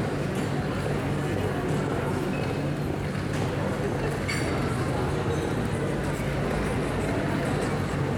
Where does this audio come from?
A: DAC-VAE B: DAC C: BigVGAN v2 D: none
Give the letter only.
D